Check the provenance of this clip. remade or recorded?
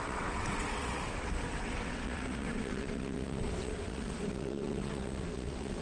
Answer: remade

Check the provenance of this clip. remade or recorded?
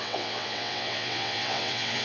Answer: remade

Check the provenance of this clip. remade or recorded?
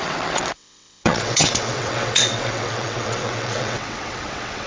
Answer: remade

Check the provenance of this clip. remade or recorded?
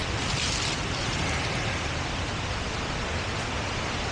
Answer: recorded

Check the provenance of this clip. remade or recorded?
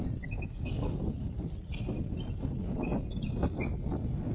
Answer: recorded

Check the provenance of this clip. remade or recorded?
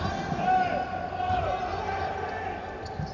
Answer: recorded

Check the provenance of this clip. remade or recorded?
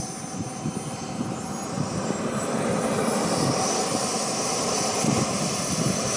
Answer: recorded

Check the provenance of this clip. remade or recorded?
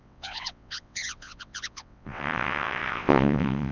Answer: remade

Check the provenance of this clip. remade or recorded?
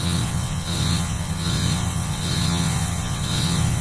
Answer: remade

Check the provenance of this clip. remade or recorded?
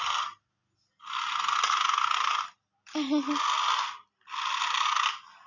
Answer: recorded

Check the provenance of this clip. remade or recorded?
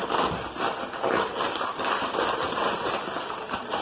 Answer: recorded